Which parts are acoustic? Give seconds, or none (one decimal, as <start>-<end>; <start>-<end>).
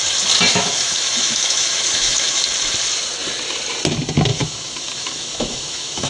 0.0-0.5; 2.4-4.3